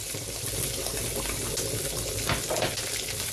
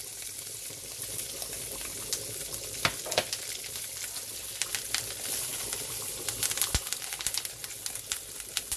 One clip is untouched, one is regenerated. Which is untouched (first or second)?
first